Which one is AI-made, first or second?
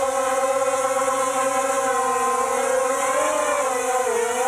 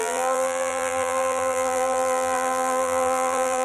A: second